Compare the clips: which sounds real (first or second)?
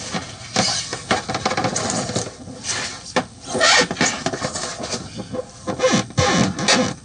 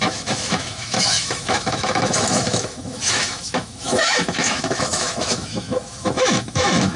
first